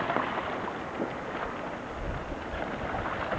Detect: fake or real real